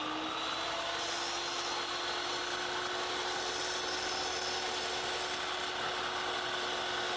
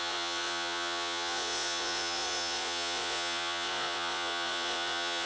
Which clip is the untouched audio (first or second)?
first